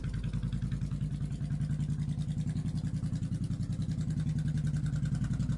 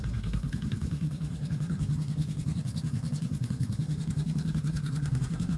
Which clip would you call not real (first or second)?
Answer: second